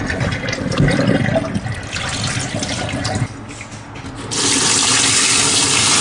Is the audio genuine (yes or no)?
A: yes